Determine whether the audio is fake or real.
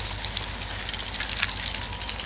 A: real